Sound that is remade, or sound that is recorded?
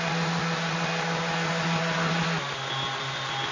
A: recorded